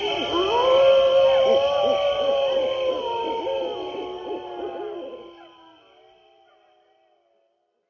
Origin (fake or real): real